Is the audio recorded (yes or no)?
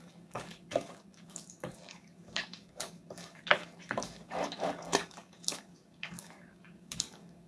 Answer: no